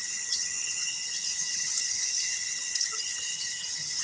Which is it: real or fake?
fake